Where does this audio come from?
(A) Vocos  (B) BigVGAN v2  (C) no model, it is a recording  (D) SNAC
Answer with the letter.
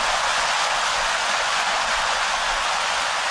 A